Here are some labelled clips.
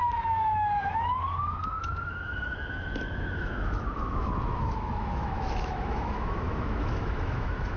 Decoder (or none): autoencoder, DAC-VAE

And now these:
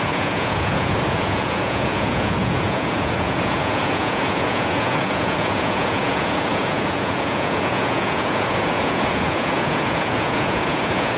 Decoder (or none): vocoder, Vocos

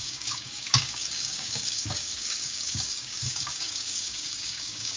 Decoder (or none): codec, DAC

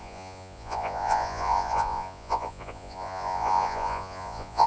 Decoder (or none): vocoder, Vocos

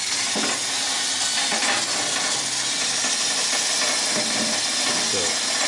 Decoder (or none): none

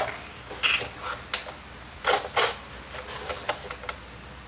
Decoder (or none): none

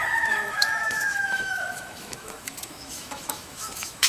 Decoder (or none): autoencoder, DAC-VAE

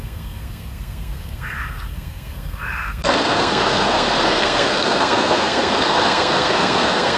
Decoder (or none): codec, SNAC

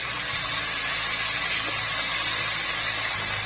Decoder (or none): none